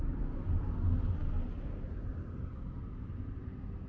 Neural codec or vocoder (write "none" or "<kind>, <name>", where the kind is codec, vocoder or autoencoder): none